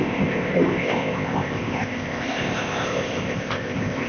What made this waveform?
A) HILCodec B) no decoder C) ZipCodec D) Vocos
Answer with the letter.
C